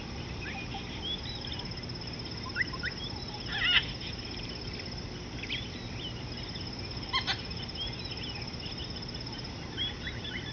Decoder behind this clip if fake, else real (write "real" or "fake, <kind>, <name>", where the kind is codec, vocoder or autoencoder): real